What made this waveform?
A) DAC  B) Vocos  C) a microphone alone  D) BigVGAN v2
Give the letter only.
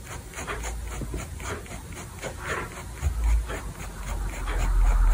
C